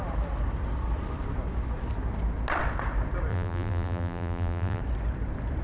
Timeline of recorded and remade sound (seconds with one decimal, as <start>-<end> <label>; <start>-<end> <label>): 0.0-3.3 recorded; 3.3-4.8 remade; 4.8-5.6 recorded